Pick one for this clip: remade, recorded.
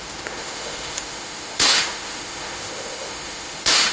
remade